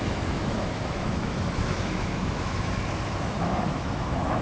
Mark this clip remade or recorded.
remade